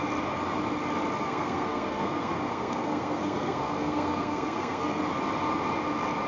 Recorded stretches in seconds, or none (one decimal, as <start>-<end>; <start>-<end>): 0.0-1.2; 5.0-6.3